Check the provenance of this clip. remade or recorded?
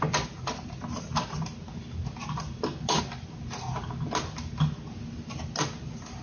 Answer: recorded